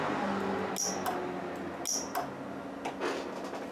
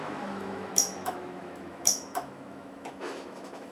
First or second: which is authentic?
first